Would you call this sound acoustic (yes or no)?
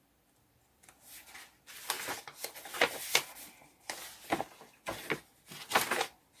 yes